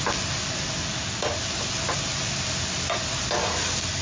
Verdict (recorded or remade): recorded